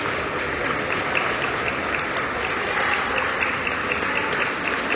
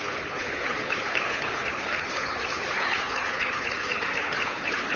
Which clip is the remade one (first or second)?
second